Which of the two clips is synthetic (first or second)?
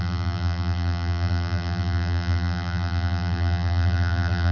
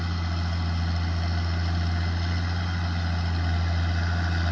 first